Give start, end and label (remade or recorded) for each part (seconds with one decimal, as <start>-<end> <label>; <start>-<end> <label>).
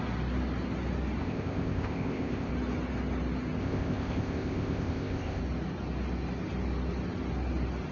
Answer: 0.0-1.2 recorded; 1.2-2.5 remade; 2.5-3.6 recorded; 3.6-5.4 remade; 5.4-7.9 recorded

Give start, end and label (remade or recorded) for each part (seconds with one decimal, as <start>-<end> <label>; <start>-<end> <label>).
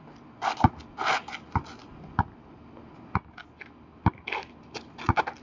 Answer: 0.0-5.4 recorded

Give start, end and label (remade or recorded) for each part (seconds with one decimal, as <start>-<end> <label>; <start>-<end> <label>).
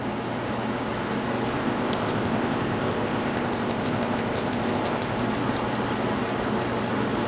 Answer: 0.0-1.6 recorded; 1.6-5.2 remade; 5.2-7.3 recorded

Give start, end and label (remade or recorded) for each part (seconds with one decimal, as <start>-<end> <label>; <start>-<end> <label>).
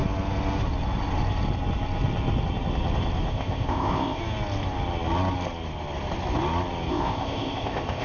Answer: 0.0-3.3 recorded; 3.3-4.2 remade; 4.2-6.9 recorded; 6.9-8.0 remade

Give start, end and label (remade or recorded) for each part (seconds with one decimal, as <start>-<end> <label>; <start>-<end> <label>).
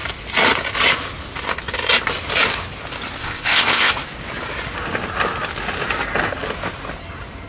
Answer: 0.0-3.2 recorded; 3.2-3.9 remade; 3.9-7.5 recorded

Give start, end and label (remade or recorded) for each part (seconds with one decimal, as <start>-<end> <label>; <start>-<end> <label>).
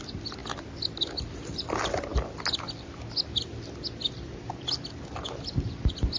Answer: 0.0-6.2 recorded